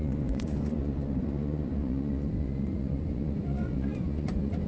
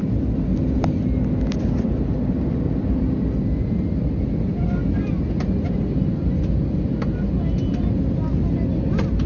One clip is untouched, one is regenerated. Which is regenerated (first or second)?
first